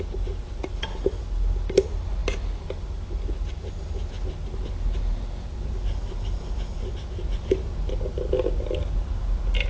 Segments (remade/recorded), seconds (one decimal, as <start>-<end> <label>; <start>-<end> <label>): 0.0-9.7 recorded